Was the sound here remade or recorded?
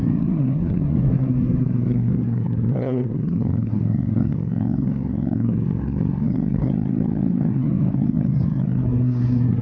remade